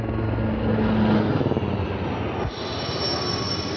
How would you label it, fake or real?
real